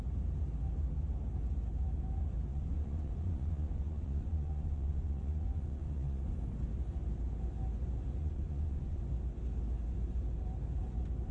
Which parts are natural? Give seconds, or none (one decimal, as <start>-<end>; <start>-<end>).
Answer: 0.0-2.5; 6.3-8.2; 9.0-11.3